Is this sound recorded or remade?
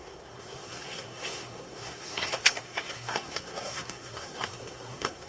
remade